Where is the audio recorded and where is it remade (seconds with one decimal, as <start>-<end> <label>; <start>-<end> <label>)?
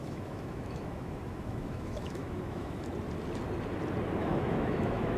0.0-2.9 remade; 2.9-4.2 recorded; 4.2-5.2 remade